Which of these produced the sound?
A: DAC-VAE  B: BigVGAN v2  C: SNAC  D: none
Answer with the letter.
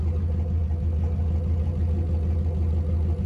D